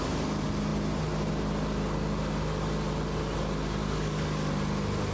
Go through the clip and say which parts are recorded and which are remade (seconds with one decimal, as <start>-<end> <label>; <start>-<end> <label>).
0.0-3.8 recorded; 3.8-4.5 remade; 4.5-5.1 recorded